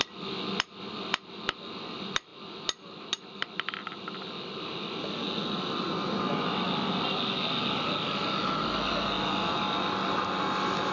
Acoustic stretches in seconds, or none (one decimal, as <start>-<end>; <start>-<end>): 0.0-10.9